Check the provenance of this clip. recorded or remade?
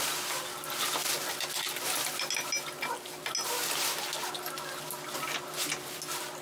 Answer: recorded